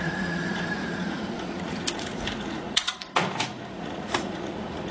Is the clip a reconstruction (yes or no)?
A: yes